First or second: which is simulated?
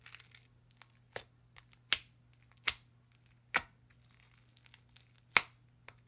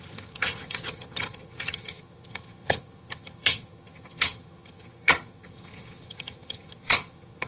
second